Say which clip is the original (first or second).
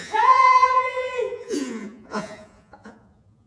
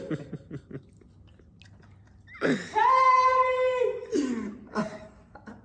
second